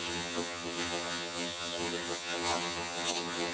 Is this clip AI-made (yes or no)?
yes